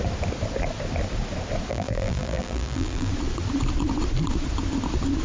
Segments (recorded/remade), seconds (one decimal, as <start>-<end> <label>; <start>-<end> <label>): 0.0-1.7 recorded; 1.7-3.1 remade; 3.1-5.2 recorded